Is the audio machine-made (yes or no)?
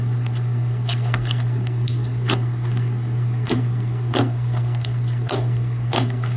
yes